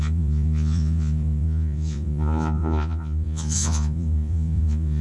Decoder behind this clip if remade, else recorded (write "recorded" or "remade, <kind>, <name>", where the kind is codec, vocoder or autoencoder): remade, vocoder, Vocos